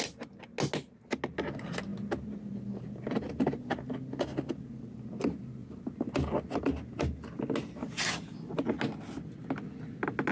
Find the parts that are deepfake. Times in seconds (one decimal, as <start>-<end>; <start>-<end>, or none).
none